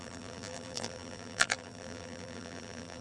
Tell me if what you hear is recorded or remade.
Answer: remade